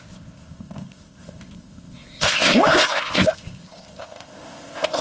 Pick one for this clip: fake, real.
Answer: fake